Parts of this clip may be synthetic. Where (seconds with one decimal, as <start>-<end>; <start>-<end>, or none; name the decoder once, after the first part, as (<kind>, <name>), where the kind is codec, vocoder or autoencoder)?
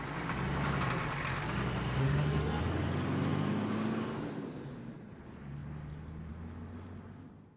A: 2.0-2.6 (codec, SNAC)